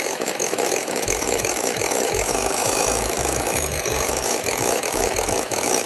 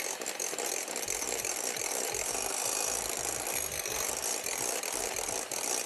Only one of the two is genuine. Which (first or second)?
second